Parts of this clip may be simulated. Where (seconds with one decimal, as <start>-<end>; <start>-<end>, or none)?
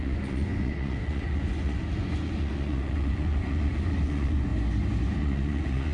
0.0-4.5; 5.2-5.9